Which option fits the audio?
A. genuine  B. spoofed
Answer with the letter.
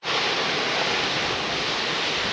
A